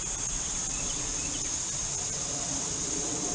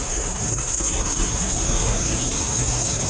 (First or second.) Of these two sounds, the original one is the first